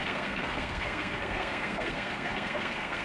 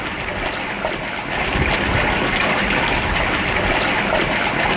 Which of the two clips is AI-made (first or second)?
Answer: first